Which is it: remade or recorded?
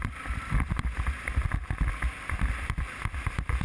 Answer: recorded